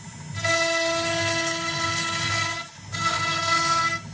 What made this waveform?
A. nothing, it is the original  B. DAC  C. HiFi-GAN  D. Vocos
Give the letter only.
A